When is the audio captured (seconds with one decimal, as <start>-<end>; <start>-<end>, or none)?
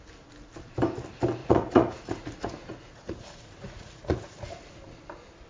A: 0.0-1.4; 4.7-5.5